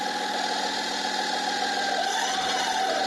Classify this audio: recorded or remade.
recorded